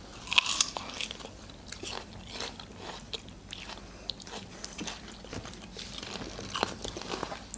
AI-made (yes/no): no